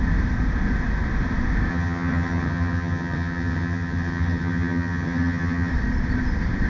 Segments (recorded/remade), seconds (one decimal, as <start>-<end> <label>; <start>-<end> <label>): 0.0-1.7 recorded; 1.7-5.7 remade; 5.7-6.7 recorded